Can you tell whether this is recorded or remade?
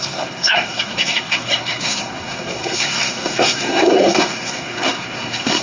remade